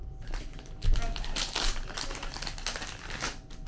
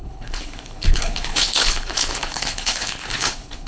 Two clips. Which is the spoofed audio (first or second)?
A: second